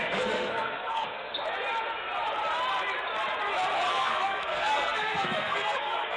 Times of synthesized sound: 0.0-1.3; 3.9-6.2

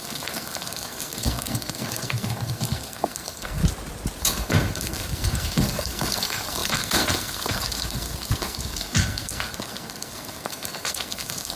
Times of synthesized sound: 0.0-3.6; 4.2-11.6

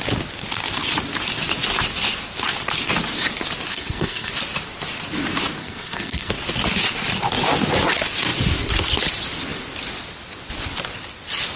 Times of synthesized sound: 3.7-4.3; 5.6-6.3

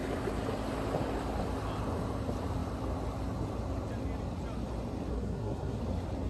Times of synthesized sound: 5.1-5.8

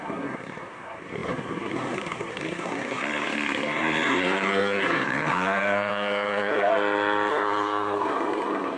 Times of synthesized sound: 0.0-6.7; 7.3-8.8

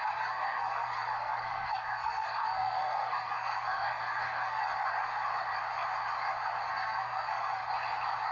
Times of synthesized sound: 0.0-4.6; 6.7-7.6

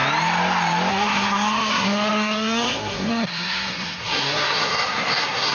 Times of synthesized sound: 0.9-5.5

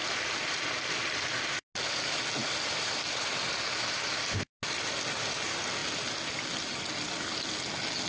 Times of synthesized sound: none